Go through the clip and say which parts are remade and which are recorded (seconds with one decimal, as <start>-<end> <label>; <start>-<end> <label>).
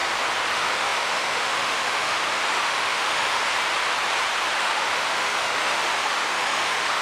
0.0-0.5 recorded; 0.5-3.4 remade; 3.4-4.6 recorded; 4.6-7.0 remade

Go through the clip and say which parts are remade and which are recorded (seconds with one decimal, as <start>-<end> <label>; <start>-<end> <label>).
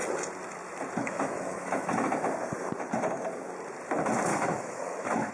0.0-1.0 recorded; 1.0-2.1 remade; 2.1-4.3 recorded; 4.3-5.3 remade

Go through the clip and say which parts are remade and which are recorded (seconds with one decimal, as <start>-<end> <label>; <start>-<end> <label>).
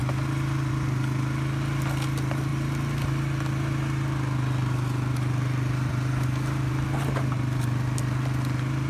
0.0-8.9 recorded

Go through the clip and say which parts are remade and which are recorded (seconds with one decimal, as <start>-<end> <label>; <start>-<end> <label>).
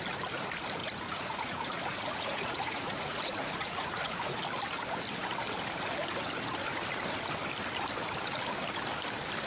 0.0-0.8 recorded; 0.8-4.4 remade; 4.4-9.5 recorded